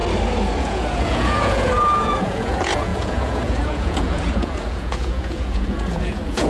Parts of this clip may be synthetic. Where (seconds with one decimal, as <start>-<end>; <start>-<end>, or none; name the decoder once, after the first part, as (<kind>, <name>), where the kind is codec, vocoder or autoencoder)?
0.6-6.5 (vocoder, Vocos)

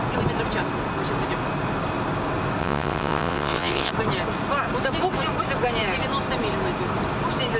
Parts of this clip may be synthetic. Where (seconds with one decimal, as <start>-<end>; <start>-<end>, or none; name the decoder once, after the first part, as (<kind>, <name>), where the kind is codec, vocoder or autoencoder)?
2.6-3.9 (vocoder, WaveNeXt)

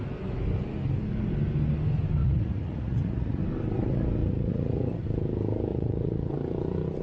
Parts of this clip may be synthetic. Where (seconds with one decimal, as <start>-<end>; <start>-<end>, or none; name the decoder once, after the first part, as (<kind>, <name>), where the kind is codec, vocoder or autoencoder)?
2.2-3.4 (vocoder, Vocos); 4.2-5.0; 5.7-6.3

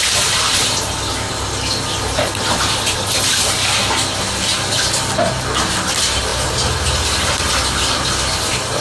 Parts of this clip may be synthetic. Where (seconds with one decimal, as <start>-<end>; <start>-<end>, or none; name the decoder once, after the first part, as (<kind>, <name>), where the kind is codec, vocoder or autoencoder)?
none

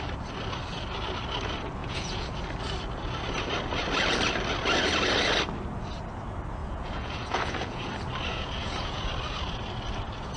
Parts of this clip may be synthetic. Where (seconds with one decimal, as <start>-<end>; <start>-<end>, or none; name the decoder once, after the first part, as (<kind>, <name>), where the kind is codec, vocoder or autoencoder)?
1.8-2.4 (vocoder, Vocos); 6.6-7.9; 8.3-9.1

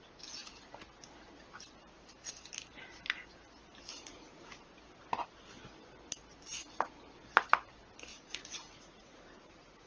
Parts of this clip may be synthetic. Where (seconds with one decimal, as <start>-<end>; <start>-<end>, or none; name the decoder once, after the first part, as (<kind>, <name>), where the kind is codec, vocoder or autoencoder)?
3.9-4.5 (vocoder, Vocos); 8.1-9.9

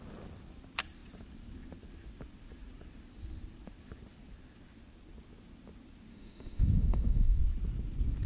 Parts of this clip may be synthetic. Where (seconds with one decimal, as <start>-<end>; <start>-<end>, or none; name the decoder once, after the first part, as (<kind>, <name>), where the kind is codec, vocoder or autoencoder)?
6.1-7.4 (autoencoder, DAC-VAE)

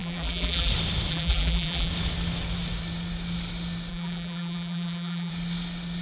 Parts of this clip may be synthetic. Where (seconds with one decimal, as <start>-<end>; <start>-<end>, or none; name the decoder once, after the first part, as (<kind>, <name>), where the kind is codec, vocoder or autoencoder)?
0.0-0.7 (vocoder, BigVGAN v2); 1.1-1.9; 3.9-5.3